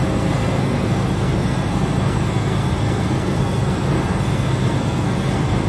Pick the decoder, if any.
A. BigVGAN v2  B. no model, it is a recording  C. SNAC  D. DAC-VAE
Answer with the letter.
C